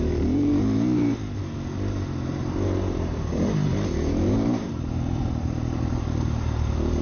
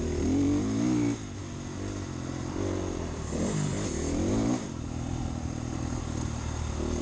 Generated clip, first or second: first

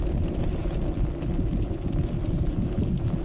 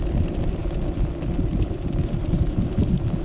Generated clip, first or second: second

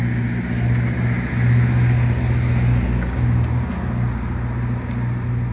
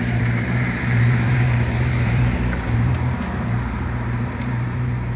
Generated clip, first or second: second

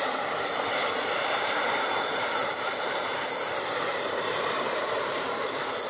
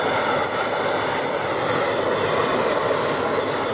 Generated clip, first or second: first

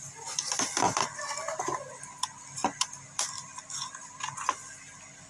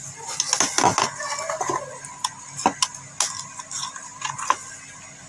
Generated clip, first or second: first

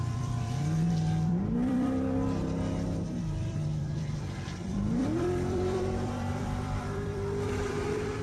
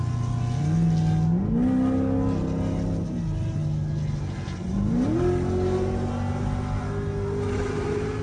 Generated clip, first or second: first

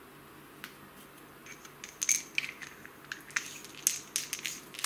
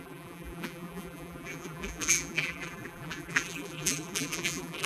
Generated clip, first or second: second